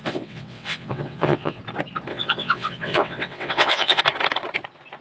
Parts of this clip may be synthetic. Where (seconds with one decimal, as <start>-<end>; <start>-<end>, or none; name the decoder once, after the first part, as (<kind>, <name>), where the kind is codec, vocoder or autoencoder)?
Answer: 0.0-1.6 (vocoder, WaveNeXt); 2.1-4.0

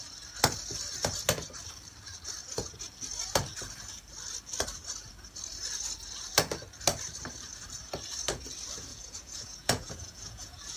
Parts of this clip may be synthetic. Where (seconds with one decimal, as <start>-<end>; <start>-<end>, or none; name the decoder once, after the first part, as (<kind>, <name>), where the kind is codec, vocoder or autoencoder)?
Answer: 8.9-10.8 (vocoder, Vocos)

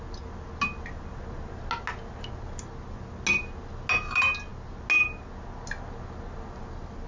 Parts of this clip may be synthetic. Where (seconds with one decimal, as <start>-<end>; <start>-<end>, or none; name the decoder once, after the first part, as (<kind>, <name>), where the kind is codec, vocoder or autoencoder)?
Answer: none

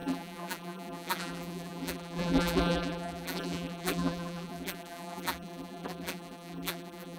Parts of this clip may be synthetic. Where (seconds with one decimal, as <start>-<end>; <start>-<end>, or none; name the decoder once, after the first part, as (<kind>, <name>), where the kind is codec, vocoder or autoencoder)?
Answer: 0.0-7.2 (vocoder, BigVGAN v2)

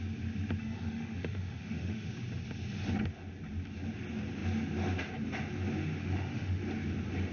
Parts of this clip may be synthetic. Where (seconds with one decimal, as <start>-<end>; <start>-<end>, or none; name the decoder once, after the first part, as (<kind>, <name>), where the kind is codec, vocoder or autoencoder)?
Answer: 0.6-2.1 (autoencoder, DAC-VAE); 6.0-6.6

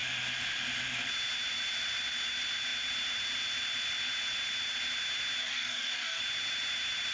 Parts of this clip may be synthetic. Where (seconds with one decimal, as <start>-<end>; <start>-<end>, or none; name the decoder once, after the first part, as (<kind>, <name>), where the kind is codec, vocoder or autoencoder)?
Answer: 5.4-6.2 (codec, DAC)